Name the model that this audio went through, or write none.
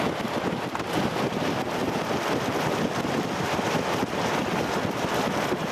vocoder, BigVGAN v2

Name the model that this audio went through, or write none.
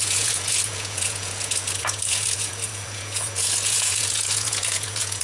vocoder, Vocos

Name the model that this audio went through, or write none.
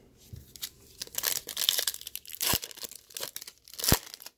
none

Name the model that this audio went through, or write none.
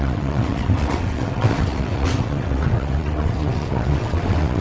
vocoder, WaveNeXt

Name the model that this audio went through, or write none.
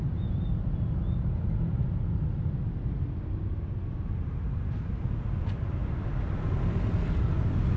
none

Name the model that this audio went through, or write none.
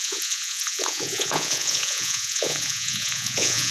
vocoder, Vocos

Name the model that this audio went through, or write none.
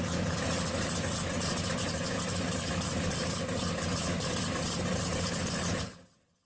none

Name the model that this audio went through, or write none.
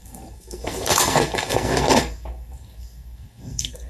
codec, SNAC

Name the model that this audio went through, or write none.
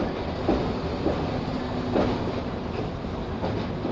none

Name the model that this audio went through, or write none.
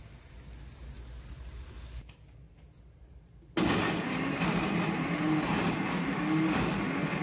none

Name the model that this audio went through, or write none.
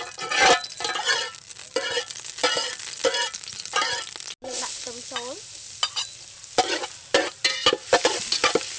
none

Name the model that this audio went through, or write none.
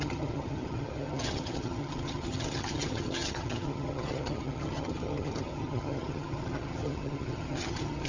vocoder, HiFi-GAN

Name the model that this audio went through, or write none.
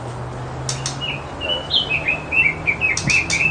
none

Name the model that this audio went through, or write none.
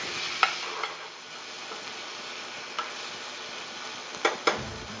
none